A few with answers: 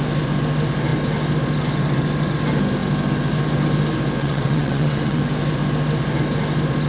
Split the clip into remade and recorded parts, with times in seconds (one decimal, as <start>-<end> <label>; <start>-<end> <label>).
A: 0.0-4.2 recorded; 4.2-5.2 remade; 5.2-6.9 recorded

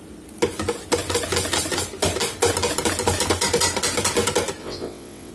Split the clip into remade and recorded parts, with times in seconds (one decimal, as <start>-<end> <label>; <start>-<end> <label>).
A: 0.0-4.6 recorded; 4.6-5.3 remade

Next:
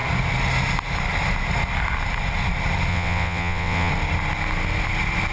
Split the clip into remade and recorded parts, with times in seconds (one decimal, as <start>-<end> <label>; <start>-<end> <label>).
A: 0.0-2.9 recorded; 2.9-3.9 remade; 3.9-5.3 recorded

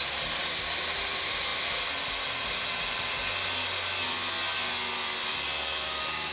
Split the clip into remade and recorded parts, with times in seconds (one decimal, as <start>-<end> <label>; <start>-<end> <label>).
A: 0.0-6.3 recorded

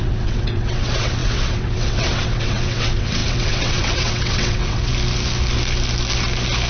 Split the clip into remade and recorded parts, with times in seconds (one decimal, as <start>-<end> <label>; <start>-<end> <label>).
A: 0.0-4.9 remade; 4.9-6.7 recorded